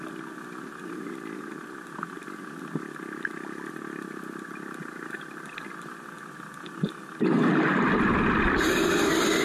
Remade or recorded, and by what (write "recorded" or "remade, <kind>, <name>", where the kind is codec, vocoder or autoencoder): recorded